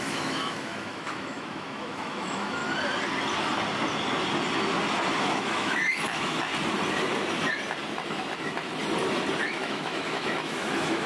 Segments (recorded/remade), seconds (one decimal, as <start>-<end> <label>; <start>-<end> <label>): 0.0-2.6 remade; 2.6-5.2 recorded; 5.2-6.5 remade; 6.5-9.4 recorded; 9.4-11.1 remade